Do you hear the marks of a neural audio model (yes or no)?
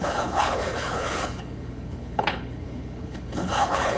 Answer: yes